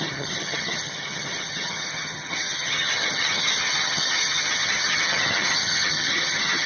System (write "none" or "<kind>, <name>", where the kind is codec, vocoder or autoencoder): vocoder, HiFi-GAN